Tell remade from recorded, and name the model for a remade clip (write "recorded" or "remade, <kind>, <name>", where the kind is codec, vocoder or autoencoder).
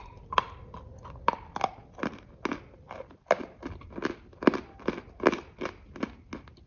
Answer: recorded